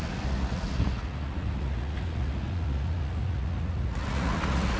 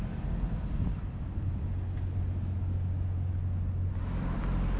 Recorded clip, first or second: second